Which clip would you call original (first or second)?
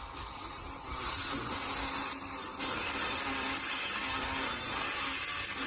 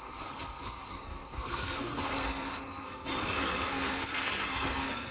first